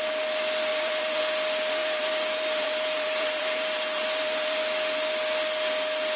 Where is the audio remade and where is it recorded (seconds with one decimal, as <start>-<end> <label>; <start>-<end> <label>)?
0.0-0.7 recorded; 0.7-1.2 remade; 1.2-1.8 recorded; 1.8-4.6 remade; 4.6-6.2 recorded